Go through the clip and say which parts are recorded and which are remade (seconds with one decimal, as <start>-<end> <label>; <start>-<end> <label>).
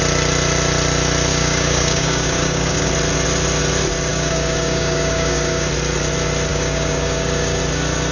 0.0-1.3 recorded; 1.3-2.9 remade; 2.9-4.1 recorded; 4.1-5.7 remade; 5.7-6.5 recorded; 6.5-7.6 remade; 7.6-8.1 recorded